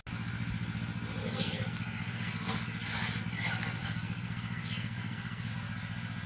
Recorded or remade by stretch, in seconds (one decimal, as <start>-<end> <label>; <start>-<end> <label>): 0.0-1.2 recorded; 1.2-3.2 remade; 3.2-3.8 recorded; 3.8-5.5 remade; 5.5-6.3 recorded